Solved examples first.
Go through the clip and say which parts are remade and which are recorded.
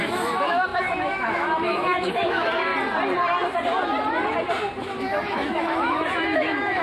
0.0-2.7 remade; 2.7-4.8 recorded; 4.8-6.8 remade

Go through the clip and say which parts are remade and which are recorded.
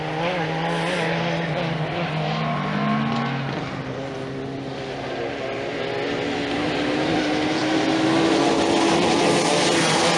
0.0-10.2 recorded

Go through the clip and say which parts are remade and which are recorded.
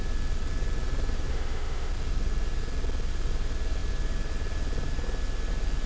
0.0-1.3 recorded; 1.3-1.9 remade; 1.9-5.9 recorded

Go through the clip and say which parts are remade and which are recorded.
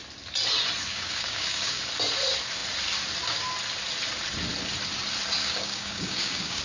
0.0-0.9 recorded; 0.9-1.8 remade; 1.8-5.4 recorded; 5.4-6.6 remade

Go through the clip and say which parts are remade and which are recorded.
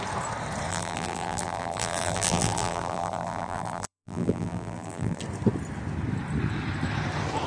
0.0-0.7 recorded; 0.7-5.2 remade; 5.2-7.5 recorded